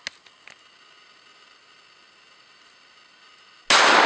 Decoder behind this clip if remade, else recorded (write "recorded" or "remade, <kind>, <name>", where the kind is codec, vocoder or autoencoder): recorded